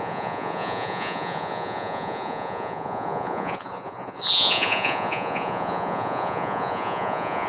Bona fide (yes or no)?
no